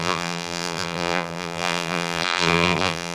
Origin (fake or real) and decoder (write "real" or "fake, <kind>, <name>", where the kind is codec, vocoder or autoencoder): fake, vocoder, BigVGAN v2